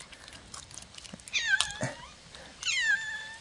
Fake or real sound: real